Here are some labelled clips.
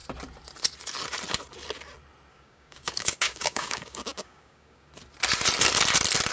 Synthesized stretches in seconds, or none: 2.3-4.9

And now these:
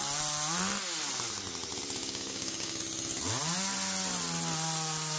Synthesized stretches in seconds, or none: 2.0-2.8

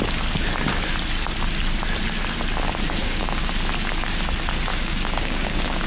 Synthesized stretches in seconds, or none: 3.0-3.5; 4.7-5.9

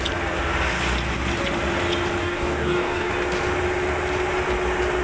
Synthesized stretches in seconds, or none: 2.2-3.1

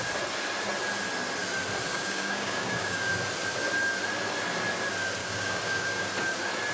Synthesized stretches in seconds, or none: 1.9-3.1; 5.2-6.1